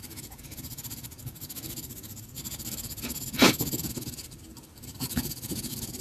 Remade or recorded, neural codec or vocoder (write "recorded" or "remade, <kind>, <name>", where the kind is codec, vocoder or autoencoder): remade, codec, DAC